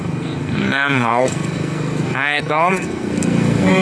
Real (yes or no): no